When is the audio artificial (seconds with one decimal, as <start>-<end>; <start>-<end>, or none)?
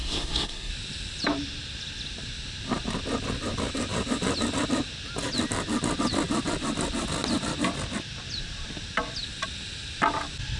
0.0-0.7